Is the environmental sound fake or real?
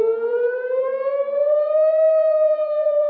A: fake